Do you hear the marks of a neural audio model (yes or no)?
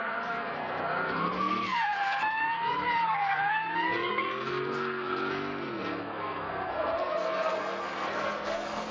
yes